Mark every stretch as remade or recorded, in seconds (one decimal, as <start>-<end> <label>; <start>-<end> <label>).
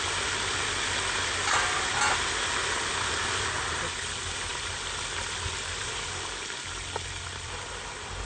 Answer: 0.0-8.3 recorded